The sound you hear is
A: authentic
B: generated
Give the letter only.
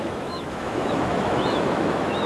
B